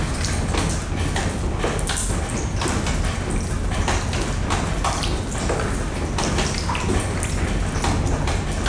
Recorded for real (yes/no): yes